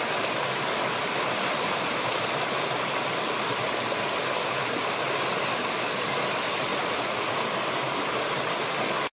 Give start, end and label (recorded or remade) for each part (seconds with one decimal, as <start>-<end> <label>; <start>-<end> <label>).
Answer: 0.0-6.7 recorded; 6.7-7.4 remade; 7.4-9.2 recorded